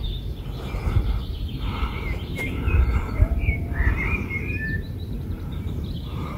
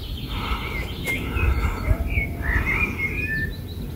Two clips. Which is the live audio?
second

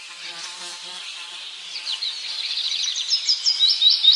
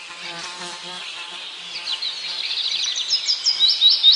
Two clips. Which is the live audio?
second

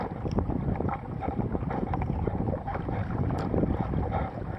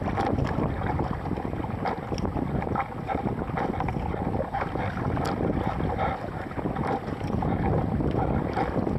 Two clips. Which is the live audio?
second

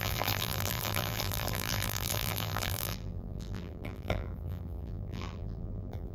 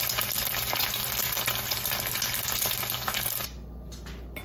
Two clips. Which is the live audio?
second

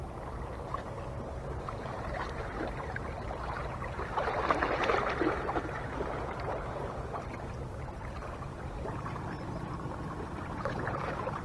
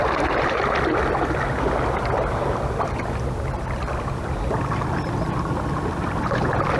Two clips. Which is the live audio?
second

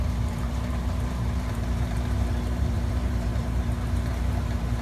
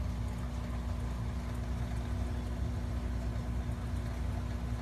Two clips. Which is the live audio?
second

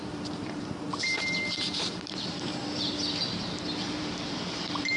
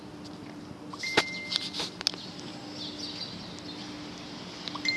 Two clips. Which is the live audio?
second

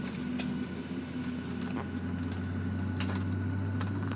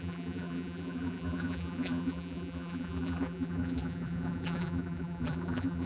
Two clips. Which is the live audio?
first